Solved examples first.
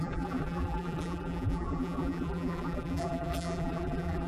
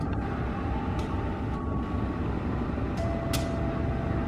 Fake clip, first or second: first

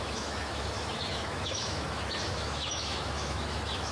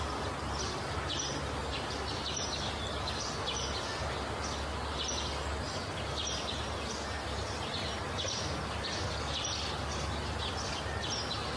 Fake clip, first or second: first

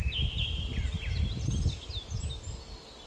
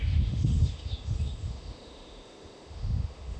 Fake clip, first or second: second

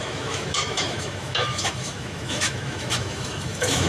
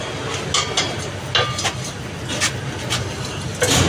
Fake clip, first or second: first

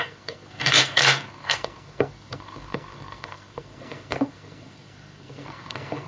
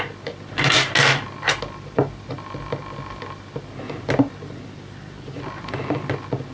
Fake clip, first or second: first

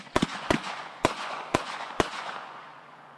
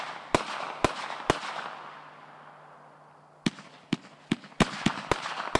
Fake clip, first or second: first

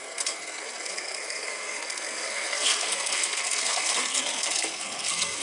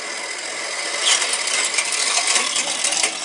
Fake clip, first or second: first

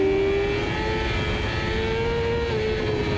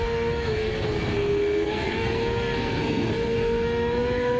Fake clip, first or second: second